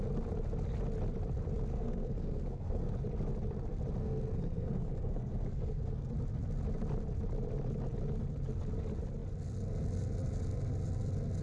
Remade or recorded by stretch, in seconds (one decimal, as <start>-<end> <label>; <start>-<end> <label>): 0.0-1.7 recorded; 1.7-2.9 remade; 2.9-4.0 recorded; 4.0-6.1 remade; 6.1-11.4 recorded